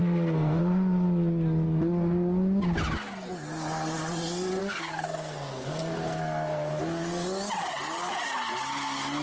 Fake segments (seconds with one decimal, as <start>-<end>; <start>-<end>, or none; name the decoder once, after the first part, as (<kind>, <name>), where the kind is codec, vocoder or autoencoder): 0.0-0.6 (codec, SNAC); 4.6-6.7